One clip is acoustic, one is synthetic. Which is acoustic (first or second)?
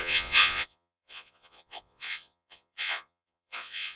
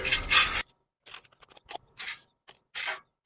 second